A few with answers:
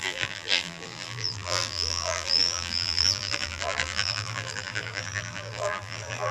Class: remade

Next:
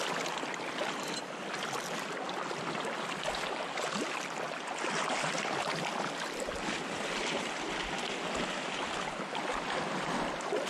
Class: recorded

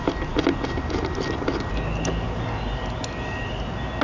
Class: recorded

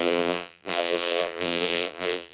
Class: remade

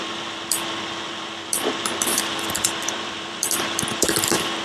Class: remade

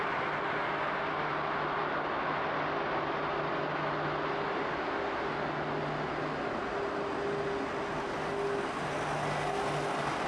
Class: recorded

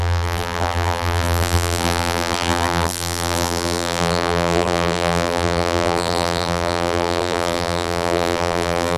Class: remade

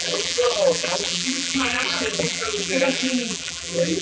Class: remade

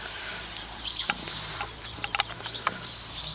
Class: remade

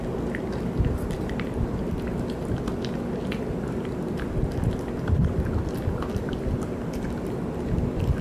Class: recorded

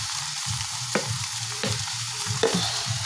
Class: remade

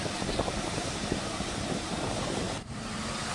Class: remade